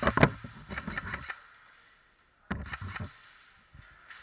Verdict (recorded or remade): recorded